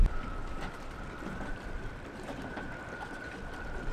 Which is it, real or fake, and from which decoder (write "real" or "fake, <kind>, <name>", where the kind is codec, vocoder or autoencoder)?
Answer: real